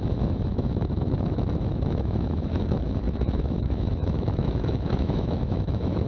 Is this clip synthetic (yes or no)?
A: yes